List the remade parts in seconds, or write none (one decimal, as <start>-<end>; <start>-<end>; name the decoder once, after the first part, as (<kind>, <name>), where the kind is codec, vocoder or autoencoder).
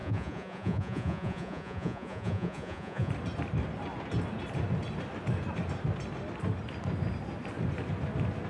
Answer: 0.0-3.1 (vocoder, Vocos)